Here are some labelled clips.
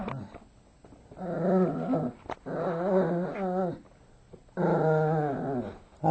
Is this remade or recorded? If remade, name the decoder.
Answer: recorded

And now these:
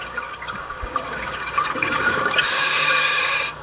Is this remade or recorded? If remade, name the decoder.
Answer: remade, codec, DAC